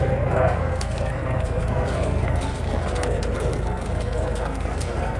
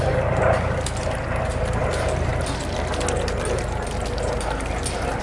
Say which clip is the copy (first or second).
first